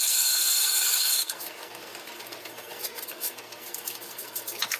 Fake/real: fake